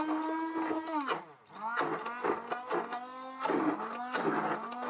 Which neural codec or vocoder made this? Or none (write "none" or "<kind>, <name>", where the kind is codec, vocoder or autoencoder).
none